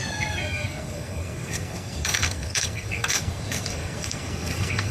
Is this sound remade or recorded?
remade